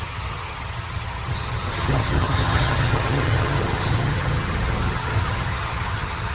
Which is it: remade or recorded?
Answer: remade